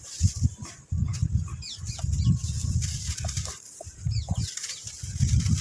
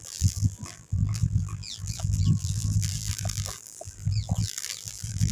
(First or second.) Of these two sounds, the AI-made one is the second